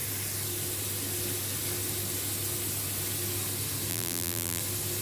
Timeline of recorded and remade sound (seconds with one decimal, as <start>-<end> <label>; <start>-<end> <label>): 0.0-3.9 recorded; 3.9-4.6 remade; 4.6-5.0 recorded